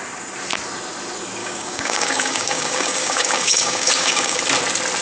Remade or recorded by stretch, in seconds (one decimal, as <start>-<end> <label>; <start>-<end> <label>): 0.0-1.4 recorded; 1.4-4.4 remade; 4.4-5.0 recorded